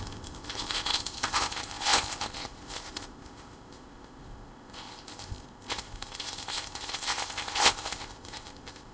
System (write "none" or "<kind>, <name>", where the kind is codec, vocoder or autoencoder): codec, ZipCodec